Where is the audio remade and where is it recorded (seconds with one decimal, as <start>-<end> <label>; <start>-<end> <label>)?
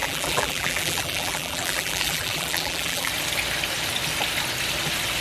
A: 0.0-3.1 remade; 3.1-5.2 recorded